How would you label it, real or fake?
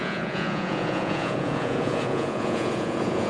fake